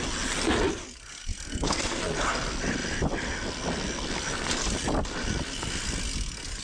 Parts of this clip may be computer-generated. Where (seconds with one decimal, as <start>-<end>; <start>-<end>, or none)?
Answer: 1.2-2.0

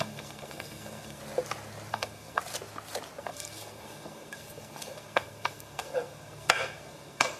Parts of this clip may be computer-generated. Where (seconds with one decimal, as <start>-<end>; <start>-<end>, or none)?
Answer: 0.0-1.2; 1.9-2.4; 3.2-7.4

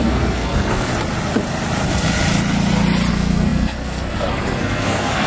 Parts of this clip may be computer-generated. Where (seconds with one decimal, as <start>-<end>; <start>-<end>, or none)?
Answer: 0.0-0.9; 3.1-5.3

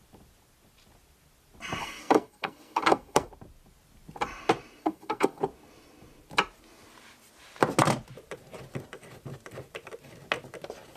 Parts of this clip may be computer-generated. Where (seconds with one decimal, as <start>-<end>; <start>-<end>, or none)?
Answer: 1.8-3.3; 4.8-5.4

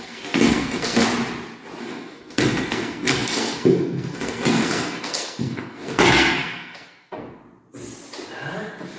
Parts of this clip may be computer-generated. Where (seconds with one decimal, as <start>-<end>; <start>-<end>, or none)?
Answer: 0.0-1.0; 1.8-7.4

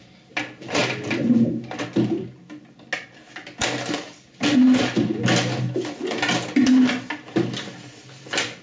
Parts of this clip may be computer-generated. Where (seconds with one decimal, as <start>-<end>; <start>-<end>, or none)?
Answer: none